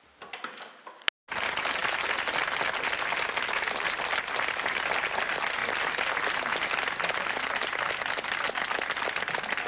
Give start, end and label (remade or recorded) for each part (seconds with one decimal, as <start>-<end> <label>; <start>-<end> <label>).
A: 0.0-9.7 recorded